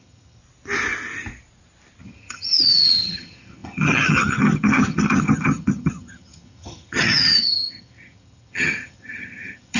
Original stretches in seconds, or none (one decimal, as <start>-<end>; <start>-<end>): 0.4-2.0